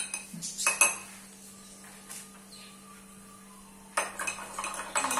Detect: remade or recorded recorded